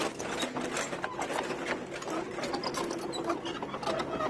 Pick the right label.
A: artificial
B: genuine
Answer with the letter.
B